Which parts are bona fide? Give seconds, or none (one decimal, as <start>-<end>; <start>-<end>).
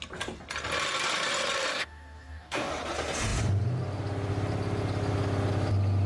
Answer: 0.0-1.7; 2.7-6.1